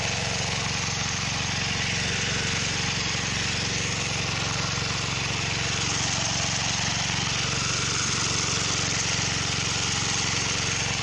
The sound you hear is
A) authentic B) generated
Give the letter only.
A